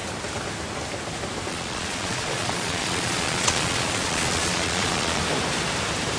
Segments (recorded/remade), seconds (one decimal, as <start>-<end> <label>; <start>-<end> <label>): 0.0-1.5 recorded; 1.5-5.2 remade; 5.2-6.2 recorded